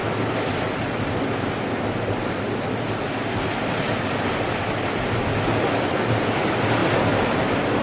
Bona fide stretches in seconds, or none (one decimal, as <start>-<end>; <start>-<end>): 0.0-7.8